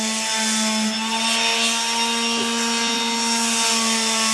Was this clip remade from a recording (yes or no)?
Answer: no